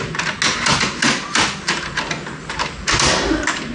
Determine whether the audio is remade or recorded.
recorded